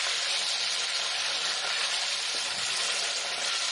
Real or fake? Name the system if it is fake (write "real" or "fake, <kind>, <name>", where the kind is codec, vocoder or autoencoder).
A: real